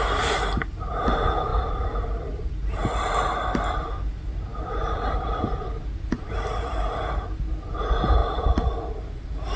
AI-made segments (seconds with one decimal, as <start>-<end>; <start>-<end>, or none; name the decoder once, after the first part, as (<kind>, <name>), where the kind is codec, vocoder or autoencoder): 1.5-2.7 (vocoder, BigVGAN v2); 4.5-6.7; 8.2-9.0